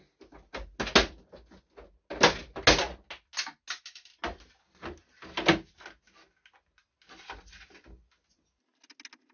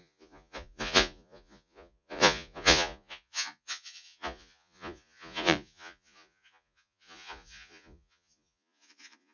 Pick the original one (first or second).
first